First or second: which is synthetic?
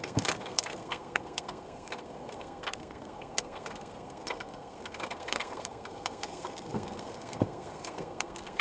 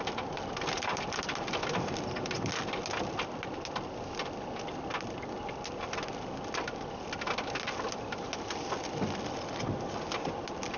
first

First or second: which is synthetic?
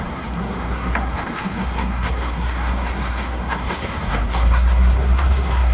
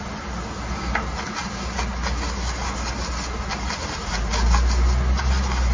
first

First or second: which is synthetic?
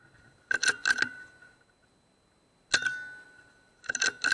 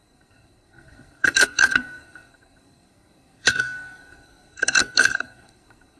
second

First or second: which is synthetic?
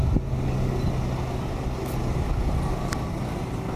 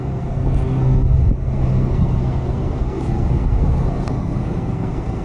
second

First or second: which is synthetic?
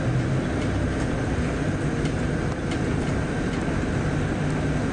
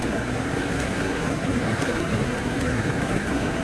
second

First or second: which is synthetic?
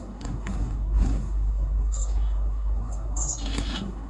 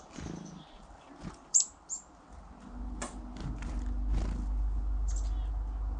first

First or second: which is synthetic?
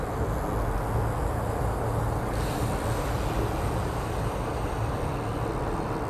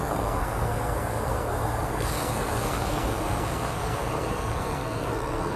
second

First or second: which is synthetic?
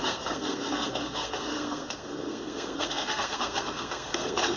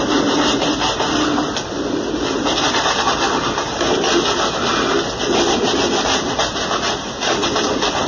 first